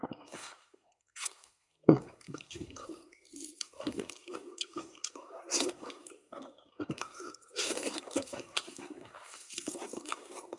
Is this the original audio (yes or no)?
no